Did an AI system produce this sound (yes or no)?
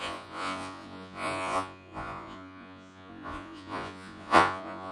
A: yes